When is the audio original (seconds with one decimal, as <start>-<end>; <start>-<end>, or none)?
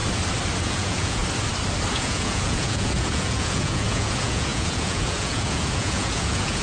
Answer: 0.0-0.6; 1.2-1.9